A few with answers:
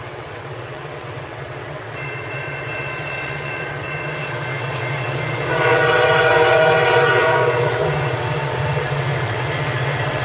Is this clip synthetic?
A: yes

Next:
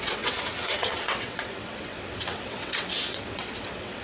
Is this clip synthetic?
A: yes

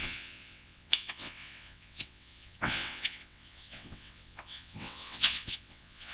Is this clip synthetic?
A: yes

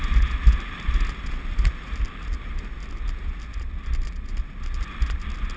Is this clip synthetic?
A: no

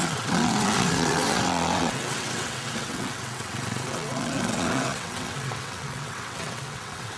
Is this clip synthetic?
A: yes